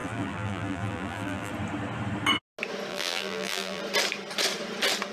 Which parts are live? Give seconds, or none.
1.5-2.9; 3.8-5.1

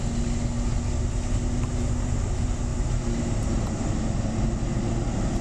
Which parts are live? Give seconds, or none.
0.0-5.4